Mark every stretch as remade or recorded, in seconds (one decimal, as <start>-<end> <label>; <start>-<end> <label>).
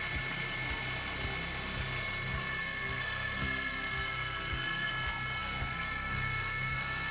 0.0-2.6 recorded; 2.6-4.9 remade; 4.9-5.4 recorded; 5.4-7.1 remade